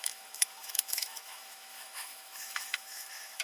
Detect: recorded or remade remade